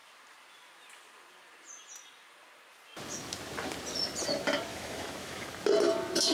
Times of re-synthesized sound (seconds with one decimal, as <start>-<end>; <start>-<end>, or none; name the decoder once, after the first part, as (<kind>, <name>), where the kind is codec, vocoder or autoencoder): 4.7-5.5 (autoencoder, DAC-VAE)